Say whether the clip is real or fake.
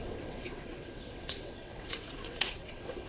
fake